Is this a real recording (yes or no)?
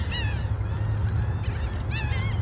yes